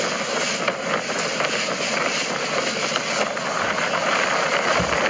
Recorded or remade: recorded